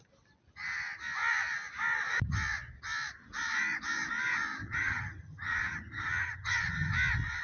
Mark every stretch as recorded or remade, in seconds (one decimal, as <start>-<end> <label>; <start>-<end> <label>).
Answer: 0.0-4.6 recorded; 4.6-6.9 remade; 6.9-7.4 recorded